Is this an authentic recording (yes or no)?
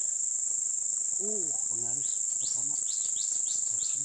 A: yes